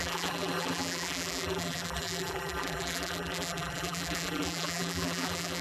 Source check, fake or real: fake